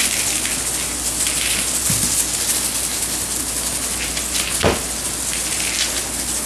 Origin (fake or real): real